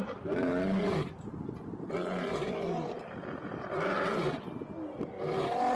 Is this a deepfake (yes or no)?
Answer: no